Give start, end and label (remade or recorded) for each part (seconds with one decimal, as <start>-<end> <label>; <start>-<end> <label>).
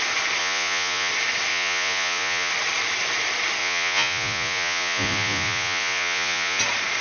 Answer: 0.0-0.4 recorded; 0.4-1.1 remade; 1.1-1.5 recorded; 1.5-2.5 remade; 2.5-3.6 recorded; 3.6-6.6 remade; 6.6-7.0 recorded